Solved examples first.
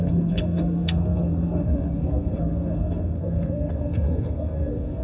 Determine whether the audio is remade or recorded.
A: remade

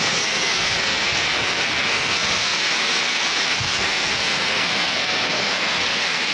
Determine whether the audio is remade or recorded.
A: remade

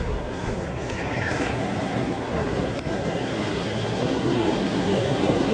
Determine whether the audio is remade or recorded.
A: remade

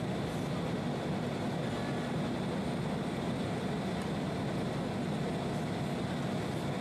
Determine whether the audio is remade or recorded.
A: recorded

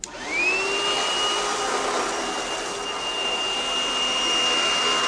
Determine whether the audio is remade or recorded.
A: recorded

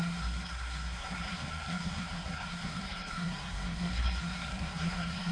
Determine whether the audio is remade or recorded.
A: remade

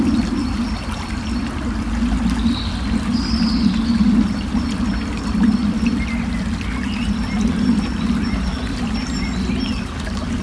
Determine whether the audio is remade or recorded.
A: recorded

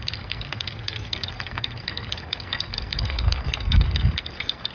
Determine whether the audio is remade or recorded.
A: remade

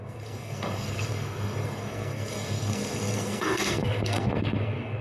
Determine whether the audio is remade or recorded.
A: remade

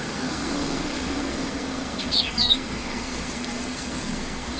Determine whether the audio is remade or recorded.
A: remade